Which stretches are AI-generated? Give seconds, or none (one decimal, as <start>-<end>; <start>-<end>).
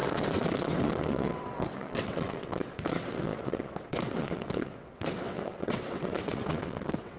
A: 0.0-7.2